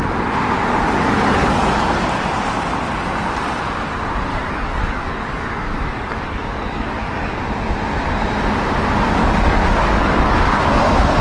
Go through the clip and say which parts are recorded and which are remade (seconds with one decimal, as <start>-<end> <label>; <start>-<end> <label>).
0.0-1.4 recorded; 1.4-2.0 remade; 2.0-4.3 recorded; 4.3-7.4 remade; 7.4-9.2 recorded; 9.2-10.7 remade; 10.7-11.2 recorded